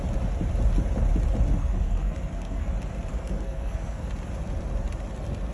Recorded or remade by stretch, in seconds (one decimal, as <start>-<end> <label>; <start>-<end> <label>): 0.0-1.6 recorded; 1.6-2.7 remade; 2.7-3.1 recorded; 3.1-4.1 remade; 4.1-5.5 recorded